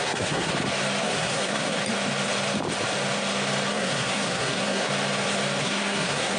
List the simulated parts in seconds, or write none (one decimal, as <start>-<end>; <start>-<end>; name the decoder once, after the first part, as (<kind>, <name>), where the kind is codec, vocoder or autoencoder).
0.0-0.5 (codec, SNAC); 1.0-1.8; 3.7-4.9; 5.6-6.4